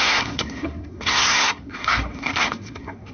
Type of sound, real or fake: fake